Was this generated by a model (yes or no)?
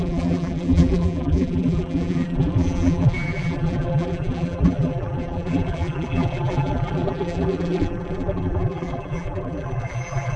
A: yes